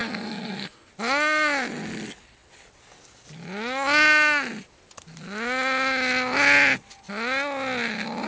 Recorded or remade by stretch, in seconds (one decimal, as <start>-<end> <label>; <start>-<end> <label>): 0.0-0.9 remade; 0.9-8.3 recorded